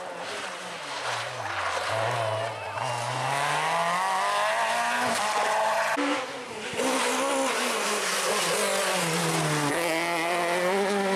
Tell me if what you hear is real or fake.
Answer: real